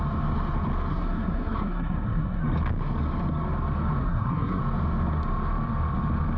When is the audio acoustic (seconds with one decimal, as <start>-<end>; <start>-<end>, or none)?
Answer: 0.0-0.9; 2.4-4.0; 4.6-6.4